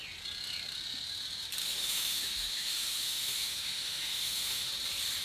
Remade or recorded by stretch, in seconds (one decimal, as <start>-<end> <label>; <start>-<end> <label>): 0.0-1.6 recorded; 1.6-4.7 remade; 4.7-5.2 recorded